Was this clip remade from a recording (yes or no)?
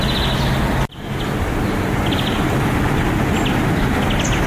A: no